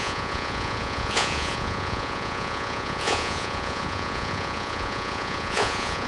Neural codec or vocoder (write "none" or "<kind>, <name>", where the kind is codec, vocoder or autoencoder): vocoder, Vocos